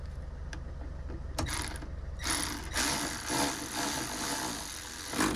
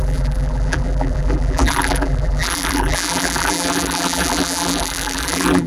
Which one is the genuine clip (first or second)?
first